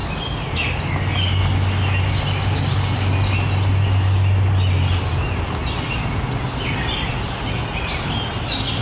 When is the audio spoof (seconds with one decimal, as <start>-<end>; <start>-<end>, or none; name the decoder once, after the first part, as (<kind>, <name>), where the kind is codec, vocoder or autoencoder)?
none